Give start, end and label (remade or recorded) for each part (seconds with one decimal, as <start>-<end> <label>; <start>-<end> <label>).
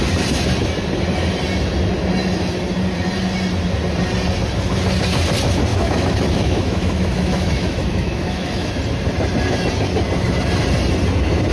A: 0.0-5.7 recorded; 5.7-8.7 remade; 8.7-11.5 recorded